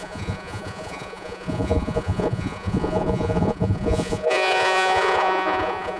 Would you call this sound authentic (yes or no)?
no